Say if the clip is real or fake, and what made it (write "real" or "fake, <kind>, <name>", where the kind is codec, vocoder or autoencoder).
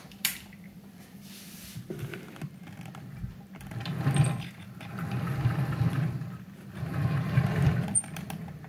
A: real